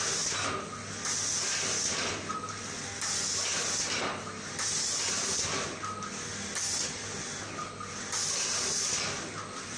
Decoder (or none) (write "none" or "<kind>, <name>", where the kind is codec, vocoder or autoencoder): none